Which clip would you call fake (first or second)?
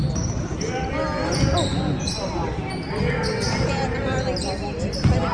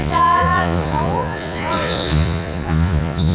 second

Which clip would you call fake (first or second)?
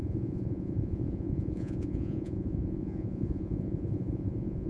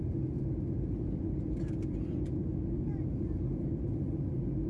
first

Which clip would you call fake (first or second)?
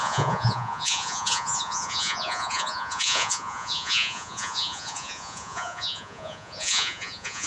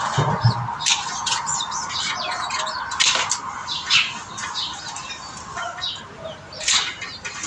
first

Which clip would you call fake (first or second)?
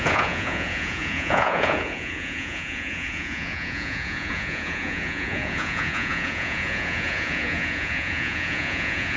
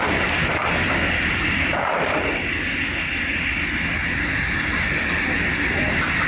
first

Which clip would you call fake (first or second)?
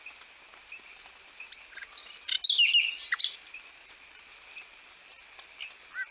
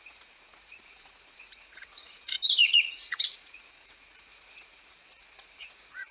second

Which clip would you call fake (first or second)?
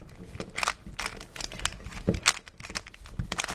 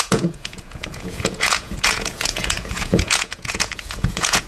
second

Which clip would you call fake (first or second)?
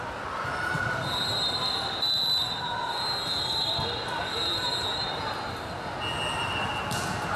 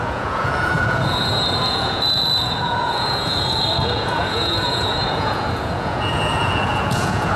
second